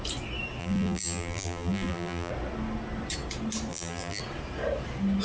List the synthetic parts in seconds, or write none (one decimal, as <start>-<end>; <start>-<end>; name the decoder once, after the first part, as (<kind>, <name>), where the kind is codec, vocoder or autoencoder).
0.6-2.3 (vocoder, BigVGAN v2); 3.7-4.2